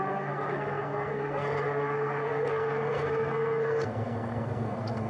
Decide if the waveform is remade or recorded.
remade